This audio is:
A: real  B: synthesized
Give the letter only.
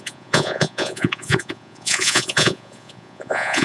B